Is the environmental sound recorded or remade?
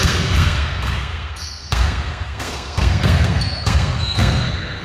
remade